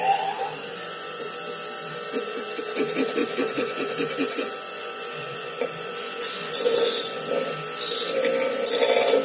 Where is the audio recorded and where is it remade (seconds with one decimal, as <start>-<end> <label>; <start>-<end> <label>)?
0.0-0.7 recorded; 0.7-1.3 remade; 1.3-3.2 recorded; 3.2-7.3 remade; 7.3-9.2 recorded

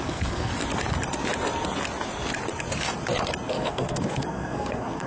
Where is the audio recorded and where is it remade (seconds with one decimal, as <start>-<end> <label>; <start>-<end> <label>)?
0.0-0.5 remade; 0.5-3.5 recorded; 3.5-5.1 remade

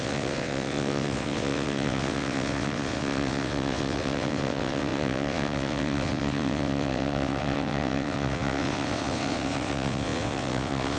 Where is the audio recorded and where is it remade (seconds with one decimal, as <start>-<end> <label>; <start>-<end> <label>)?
0.0-11.0 remade

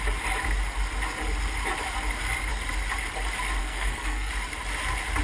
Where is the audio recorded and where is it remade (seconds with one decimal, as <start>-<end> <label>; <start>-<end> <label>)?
0.0-3.6 recorded; 3.6-4.3 remade; 4.3-5.2 recorded